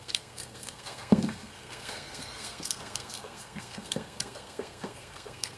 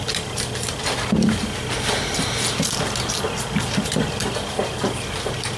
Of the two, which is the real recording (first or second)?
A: second